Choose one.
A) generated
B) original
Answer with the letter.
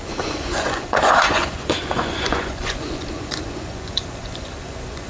A